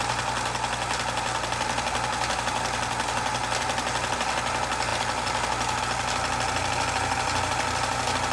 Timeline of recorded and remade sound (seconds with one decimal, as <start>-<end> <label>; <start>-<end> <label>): 0.0-8.3 recorded

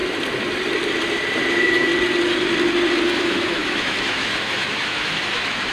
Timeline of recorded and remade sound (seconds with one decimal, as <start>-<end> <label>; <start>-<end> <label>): 0.0-1.5 recorded; 1.5-1.9 remade; 1.9-3.1 recorded; 3.1-5.7 remade